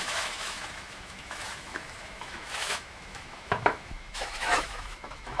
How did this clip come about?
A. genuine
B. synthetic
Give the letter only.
B